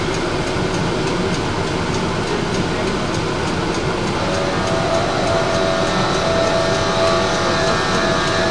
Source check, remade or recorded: recorded